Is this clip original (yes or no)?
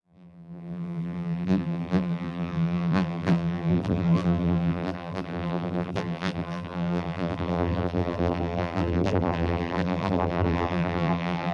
no